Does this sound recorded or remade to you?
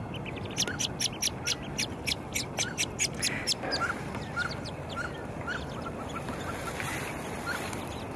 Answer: recorded